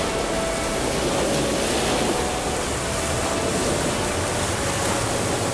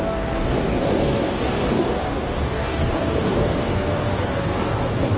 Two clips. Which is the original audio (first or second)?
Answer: first